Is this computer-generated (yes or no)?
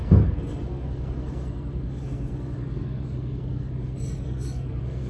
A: yes